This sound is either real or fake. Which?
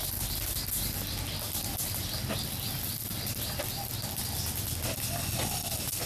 real